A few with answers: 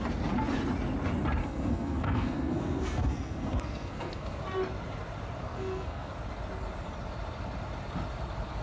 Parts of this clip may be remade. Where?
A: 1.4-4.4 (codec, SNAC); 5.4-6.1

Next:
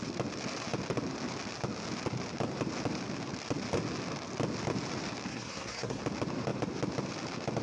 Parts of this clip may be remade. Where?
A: 5.3-6.0 (codec, SNAC)

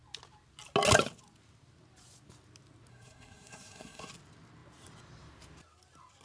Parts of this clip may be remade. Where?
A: 2.9-4.1 (codec, SNAC)